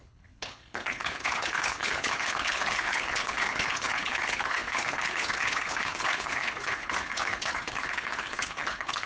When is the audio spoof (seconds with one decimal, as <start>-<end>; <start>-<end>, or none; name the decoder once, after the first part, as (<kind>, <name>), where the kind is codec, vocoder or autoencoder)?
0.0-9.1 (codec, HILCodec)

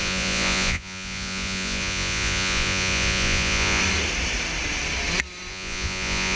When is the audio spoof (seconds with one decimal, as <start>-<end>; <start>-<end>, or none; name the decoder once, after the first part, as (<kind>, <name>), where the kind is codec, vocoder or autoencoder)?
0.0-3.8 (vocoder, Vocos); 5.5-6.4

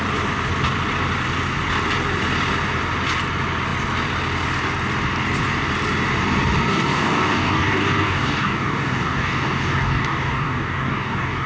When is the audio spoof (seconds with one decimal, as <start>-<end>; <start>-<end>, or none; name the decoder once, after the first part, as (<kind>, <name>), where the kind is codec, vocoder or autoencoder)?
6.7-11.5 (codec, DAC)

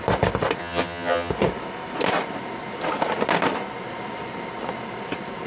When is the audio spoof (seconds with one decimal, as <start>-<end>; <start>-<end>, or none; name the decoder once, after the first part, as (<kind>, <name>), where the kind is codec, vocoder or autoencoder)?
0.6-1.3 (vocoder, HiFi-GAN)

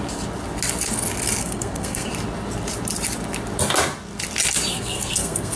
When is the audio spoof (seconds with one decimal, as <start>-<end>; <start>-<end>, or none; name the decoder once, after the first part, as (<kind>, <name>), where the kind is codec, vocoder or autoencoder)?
1.4-2.1 (codec, SNAC); 4.7-5.6